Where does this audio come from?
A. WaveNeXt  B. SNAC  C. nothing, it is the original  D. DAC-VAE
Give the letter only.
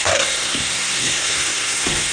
B